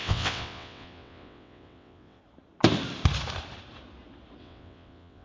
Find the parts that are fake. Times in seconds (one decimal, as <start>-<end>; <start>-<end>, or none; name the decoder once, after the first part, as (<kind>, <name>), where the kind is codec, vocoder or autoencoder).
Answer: 0.0-2.2 (vocoder, WaveNeXt); 4.4-5.2